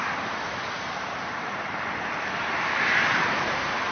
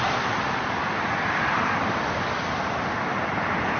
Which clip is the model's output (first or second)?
first